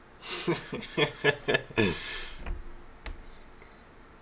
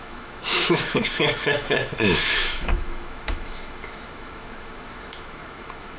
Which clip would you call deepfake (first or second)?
second